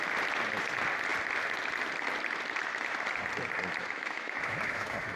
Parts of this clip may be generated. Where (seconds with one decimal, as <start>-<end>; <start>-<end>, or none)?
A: 3.8-5.2